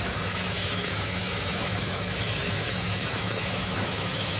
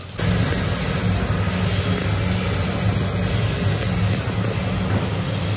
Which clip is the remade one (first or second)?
first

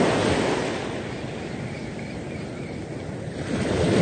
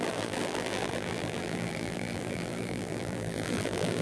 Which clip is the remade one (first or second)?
second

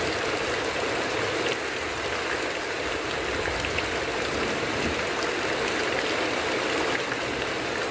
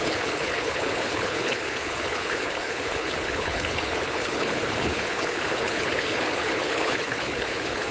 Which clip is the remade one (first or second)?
second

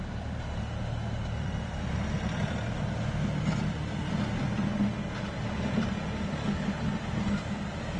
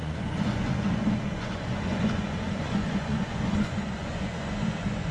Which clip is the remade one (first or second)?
second